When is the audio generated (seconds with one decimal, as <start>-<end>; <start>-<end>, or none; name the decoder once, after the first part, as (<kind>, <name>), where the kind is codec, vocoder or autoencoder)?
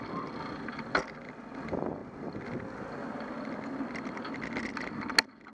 none